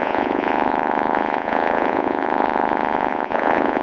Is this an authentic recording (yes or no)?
no